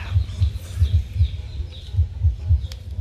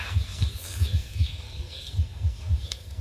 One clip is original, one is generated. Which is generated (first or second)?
second